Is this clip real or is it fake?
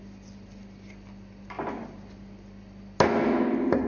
real